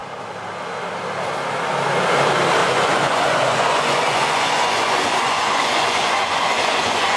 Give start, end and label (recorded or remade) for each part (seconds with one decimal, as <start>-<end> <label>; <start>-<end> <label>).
0.0-2.6 recorded; 2.6-7.2 remade